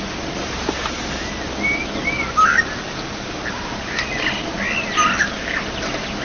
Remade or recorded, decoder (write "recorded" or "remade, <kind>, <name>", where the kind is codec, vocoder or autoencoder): recorded